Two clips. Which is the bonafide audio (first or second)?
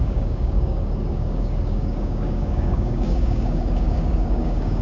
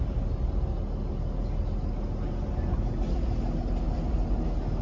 second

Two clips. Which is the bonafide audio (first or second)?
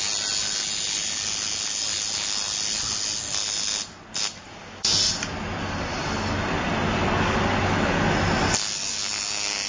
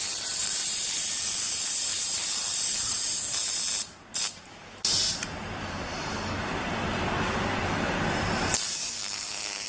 first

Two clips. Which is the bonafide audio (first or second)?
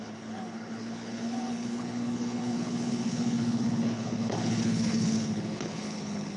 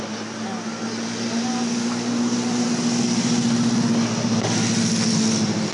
second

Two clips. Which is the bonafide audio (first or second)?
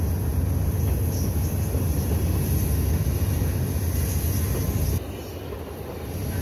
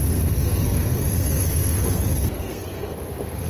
first